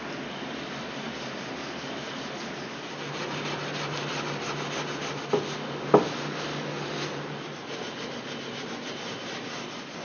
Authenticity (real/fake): real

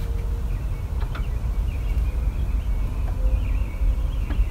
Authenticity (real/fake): real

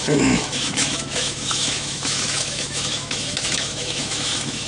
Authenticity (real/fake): fake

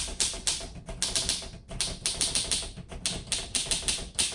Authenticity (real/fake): real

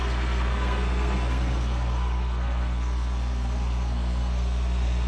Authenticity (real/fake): fake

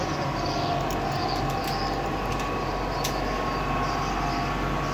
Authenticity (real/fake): real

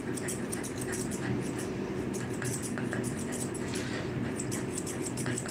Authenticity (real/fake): real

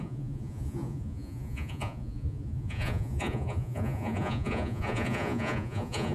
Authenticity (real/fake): fake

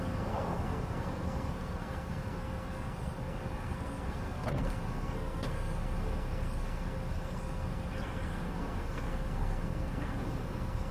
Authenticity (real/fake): fake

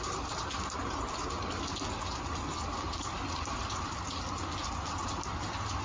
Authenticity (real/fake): real